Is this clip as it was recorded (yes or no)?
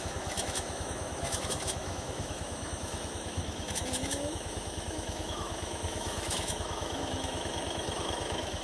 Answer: no